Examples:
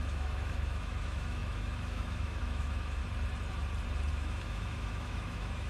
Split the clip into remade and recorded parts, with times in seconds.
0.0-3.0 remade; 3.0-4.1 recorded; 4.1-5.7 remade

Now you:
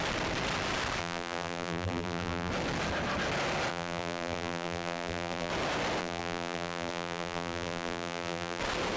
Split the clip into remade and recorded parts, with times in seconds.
0.0-1.0 recorded; 1.0-2.5 remade; 2.5-3.7 recorded; 3.7-5.5 remade; 5.5-6.0 recorded; 6.0-8.6 remade; 8.6-9.0 recorded

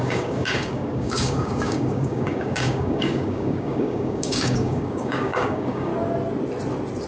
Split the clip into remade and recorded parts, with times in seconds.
0.0-5.9 remade; 5.9-7.1 recorded

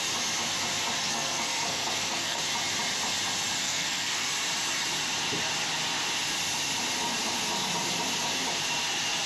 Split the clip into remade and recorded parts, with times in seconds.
0.0-1.0 recorded; 1.0-2.4 remade; 2.4-3.6 recorded; 3.6-4.3 remade; 4.3-9.3 recorded